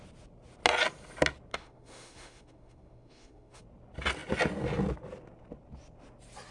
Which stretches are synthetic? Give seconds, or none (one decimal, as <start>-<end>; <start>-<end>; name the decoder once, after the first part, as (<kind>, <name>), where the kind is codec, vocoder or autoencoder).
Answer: 1.5-3.6 (autoencoder, DAC-VAE)